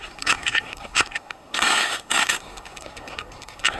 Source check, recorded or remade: remade